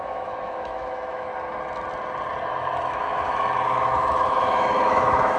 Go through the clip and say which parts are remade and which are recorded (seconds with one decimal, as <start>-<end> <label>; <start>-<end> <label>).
0.0-1.3 remade; 1.3-2.5 recorded; 2.5-5.4 remade